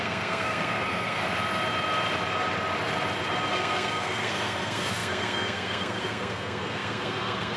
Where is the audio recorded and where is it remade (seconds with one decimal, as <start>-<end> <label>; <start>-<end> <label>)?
0.0-1.2 remade; 1.2-3.5 recorded; 3.5-7.6 remade